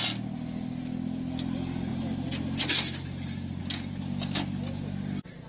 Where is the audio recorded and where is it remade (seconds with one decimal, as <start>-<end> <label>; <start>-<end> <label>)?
0.0-5.5 recorded